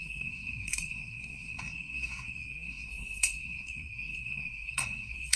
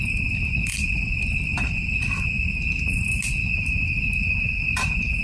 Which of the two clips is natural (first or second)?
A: second